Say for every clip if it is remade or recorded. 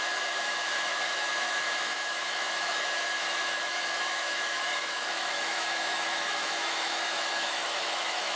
remade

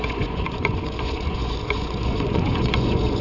remade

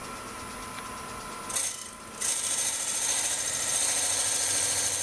recorded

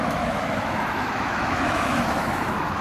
remade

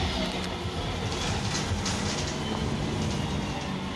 recorded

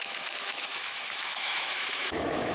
remade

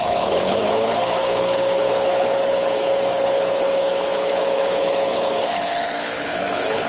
remade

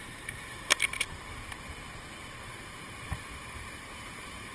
remade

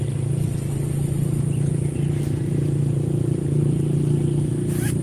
remade